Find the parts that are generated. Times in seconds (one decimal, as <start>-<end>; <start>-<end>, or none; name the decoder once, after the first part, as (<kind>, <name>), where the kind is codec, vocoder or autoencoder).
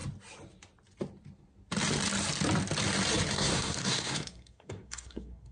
3.3-5.5 (codec, SNAC)